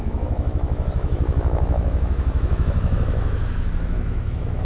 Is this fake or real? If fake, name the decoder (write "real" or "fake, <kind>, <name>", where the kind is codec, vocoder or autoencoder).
fake, autoencoder, DAC-VAE